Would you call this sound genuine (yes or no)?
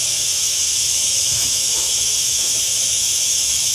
no